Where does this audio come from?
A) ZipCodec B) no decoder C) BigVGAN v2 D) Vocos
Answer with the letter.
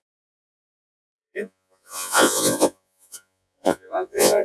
D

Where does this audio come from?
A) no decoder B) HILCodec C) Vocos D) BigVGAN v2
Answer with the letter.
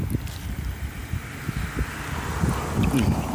A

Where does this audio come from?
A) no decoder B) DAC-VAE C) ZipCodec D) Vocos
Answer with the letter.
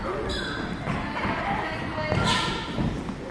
A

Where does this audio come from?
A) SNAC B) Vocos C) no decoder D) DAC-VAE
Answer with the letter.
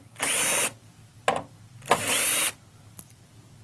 C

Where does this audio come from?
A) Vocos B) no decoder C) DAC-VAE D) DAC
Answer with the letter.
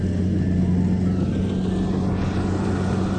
B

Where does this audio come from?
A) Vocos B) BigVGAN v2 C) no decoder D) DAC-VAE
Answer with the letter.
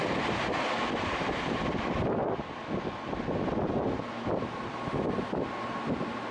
C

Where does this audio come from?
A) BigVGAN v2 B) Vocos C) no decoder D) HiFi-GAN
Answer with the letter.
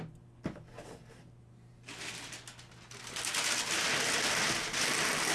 C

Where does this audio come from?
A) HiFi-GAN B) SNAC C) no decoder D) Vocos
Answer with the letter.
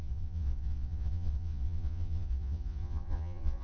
D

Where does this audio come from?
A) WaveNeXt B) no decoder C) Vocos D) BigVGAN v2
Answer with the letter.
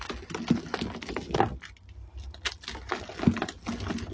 B